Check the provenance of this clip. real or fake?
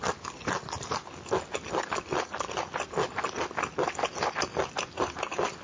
real